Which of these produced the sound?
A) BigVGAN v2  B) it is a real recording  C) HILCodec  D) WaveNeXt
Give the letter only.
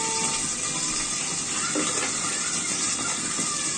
B